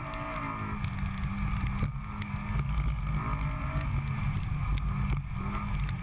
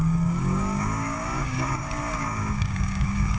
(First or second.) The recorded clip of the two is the first